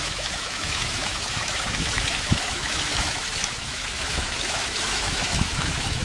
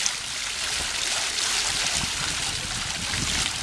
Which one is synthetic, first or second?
first